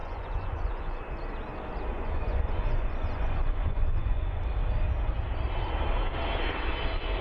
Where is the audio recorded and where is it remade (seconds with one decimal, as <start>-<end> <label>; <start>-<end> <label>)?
0.0-1.0 remade; 1.0-1.9 recorded; 1.9-4.4 remade; 4.4-7.2 recorded